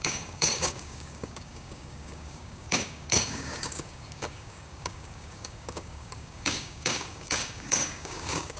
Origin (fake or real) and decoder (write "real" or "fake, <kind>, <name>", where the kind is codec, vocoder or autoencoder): fake, codec, DAC